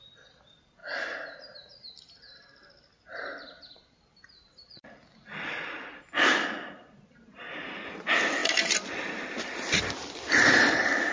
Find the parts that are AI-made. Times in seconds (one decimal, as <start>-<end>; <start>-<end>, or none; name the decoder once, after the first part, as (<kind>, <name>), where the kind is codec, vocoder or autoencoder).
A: 3.1-5.7 (vocoder, BigVGAN v2); 8.4-11.1